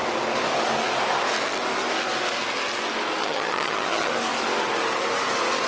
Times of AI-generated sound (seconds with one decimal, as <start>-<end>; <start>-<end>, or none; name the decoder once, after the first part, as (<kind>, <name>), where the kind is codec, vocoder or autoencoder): 3.2-4.1 (vocoder, HiFi-GAN)